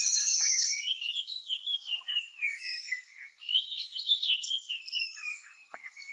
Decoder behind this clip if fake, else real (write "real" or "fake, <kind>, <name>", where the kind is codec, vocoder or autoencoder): fake, codec, SNAC